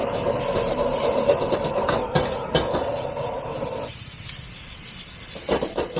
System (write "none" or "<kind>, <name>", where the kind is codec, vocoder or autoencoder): none